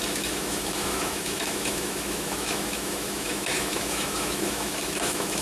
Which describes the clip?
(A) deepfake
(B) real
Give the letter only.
A